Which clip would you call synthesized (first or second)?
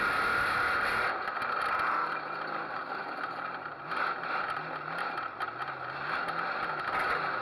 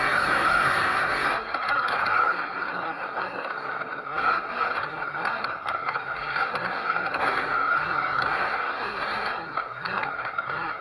second